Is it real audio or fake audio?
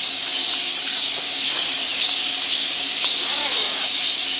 fake